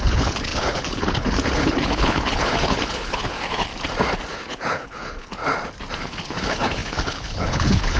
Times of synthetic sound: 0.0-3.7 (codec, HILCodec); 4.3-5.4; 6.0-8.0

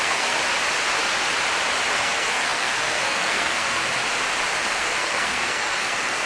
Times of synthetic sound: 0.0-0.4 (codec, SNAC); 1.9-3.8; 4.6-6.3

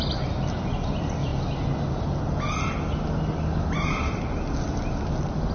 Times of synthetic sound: none

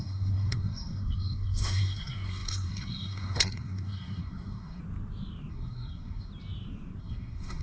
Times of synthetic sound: 0.0-4.8 (codec, SNAC); 5.5-6.3; 7.0-7.6

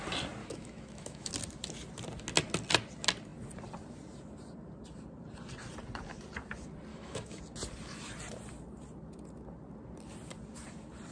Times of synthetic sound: 0.4-1.3 (autoencoder, DAC-VAE); 6.9-7.4

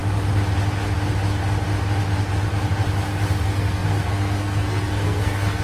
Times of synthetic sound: 3.4-5.6 (codec, SNAC)

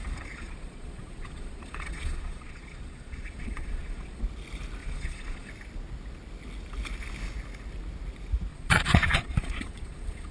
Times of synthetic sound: 0.0-4.2 (vocoder, Vocos); 4.8-5.5; 8.5-10.3